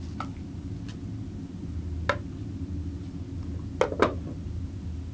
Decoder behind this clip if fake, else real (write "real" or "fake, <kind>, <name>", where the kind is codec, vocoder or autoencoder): real